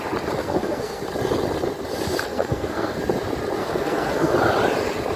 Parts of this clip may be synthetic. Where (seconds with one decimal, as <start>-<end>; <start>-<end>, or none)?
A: 0.4-1.0; 2.3-3.0; 3.6-4.3